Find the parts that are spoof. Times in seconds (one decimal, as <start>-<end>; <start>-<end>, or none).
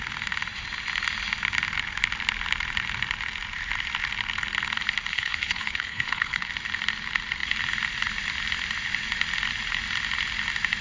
5.1-6.5